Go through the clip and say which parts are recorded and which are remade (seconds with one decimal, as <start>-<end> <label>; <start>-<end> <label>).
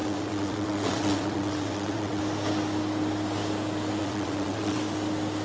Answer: 0.0-2.2 remade; 2.2-4.0 recorded; 4.0-4.8 remade; 4.8-5.4 recorded